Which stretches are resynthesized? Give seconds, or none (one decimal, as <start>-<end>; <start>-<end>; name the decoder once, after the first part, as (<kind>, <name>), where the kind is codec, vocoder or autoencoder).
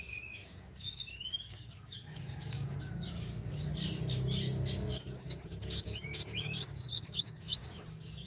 0.0-3.7 (codec, DAC); 4.9-8.3